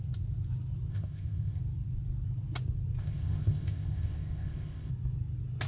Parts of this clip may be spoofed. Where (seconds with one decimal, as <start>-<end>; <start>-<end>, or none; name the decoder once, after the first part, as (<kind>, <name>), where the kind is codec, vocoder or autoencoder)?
0.9-1.6 (codec, ZipCodec); 3.0-4.9